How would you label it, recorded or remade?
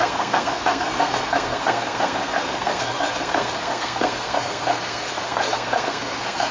remade